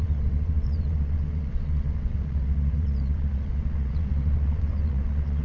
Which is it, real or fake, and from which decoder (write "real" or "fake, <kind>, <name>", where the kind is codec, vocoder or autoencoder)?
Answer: fake, vocoder, WaveNeXt